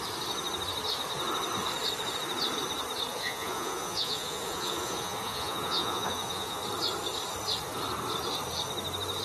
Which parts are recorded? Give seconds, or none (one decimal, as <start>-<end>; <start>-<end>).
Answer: 0.0-3.1; 6.6-9.2

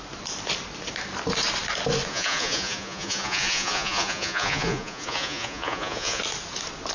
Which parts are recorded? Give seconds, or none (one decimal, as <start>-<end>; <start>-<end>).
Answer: 0.0-2.1; 6.2-6.9

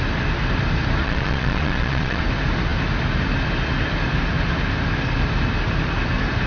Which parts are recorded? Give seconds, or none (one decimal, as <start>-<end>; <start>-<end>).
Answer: 0.0-1.0; 2.2-6.5

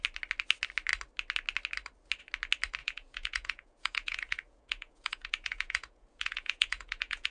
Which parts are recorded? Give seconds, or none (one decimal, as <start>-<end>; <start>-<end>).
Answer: 0.0-2.8

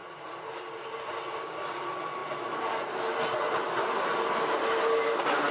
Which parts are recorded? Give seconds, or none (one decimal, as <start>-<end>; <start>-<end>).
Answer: 0.0-5.5

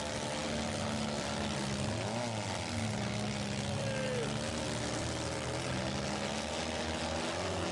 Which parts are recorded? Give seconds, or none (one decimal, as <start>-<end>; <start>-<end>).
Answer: 0.0-7.7

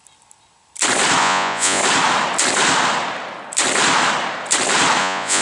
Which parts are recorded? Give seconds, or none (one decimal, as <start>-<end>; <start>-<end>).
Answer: 0.0-1.2; 1.8-5.0

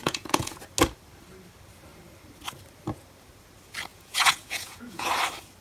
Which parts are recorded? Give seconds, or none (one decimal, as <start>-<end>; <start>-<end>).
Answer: 0.6-3.9; 5.1-5.6